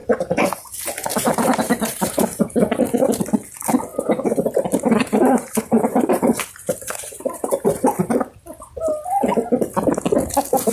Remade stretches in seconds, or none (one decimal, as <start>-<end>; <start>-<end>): 0.0-0.7; 1.1-2.8; 3.9-8.1